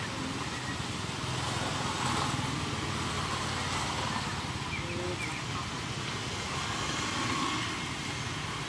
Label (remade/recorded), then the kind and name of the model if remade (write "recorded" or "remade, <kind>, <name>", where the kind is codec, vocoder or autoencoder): recorded